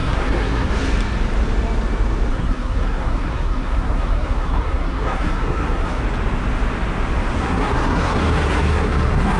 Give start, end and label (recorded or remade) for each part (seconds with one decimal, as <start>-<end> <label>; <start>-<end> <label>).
0.0-0.7 remade; 0.7-2.3 recorded; 2.3-6.0 remade; 6.0-7.4 recorded; 7.4-9.4 remade